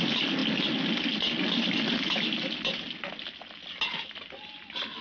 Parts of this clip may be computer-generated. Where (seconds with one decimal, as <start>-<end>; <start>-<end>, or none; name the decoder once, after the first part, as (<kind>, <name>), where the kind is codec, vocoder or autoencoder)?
none